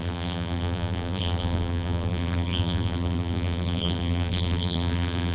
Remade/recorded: remade